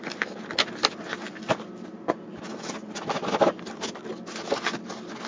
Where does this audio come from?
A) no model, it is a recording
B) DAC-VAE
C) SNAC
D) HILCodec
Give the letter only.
A